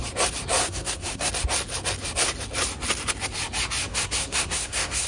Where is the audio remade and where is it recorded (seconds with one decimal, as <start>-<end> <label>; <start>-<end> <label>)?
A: 0.0-0.6 recorded; 0.6-1.3 remade; 1.3-3.9 recorded; 3.9-5.1 remade